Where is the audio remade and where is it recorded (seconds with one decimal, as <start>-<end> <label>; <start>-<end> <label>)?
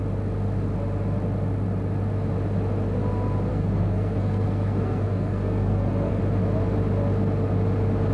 0.0-3.5 recorded; 3.5-6.2 remade; 6.2-8.1 recorded